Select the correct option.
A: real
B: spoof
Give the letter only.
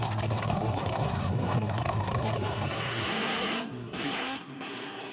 B